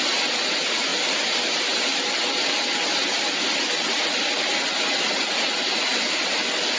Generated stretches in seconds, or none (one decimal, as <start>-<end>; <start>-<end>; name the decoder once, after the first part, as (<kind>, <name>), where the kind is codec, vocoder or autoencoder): none